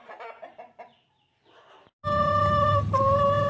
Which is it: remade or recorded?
recorded